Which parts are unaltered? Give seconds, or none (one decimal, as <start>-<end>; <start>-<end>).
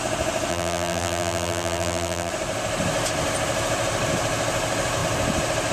0.0-0.5; 2.3-5.7